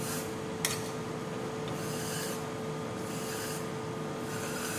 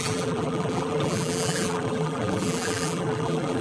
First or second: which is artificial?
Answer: second